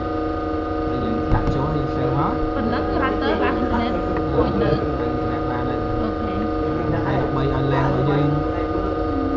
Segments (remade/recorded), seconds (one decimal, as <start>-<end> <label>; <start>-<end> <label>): 0.0-4.3 recorded; 4.3-5.0 remade; 5.0-9.4 recorded